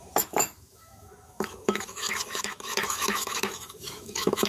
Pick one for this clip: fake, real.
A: fake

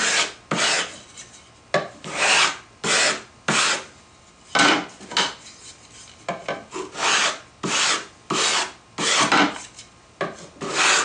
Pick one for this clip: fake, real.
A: real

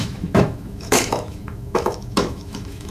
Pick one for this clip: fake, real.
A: fake